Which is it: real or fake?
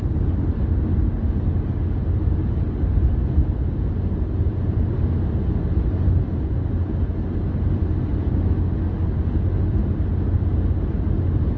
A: real